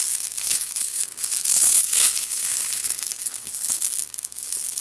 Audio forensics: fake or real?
fake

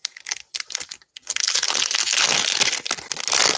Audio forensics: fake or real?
real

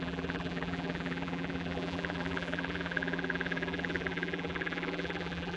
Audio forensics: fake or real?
fake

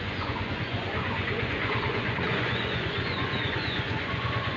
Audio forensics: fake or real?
fake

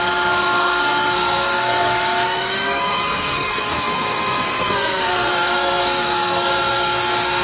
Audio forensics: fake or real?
fake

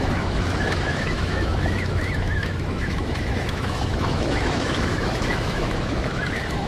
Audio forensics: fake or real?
fake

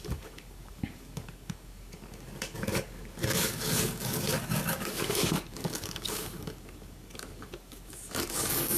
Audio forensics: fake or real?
fake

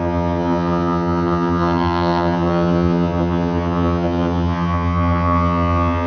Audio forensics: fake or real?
fake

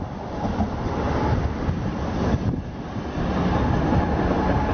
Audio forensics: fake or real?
real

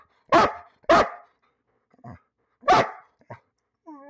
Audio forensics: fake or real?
real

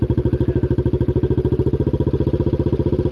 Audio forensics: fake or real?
real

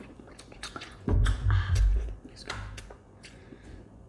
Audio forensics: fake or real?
fake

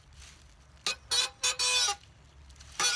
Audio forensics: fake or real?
real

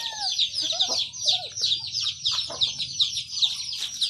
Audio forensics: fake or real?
real